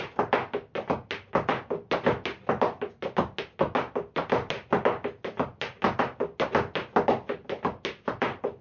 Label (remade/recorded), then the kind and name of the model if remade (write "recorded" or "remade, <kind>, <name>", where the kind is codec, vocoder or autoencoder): recorded